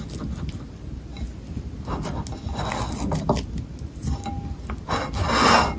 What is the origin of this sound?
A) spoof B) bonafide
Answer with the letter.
B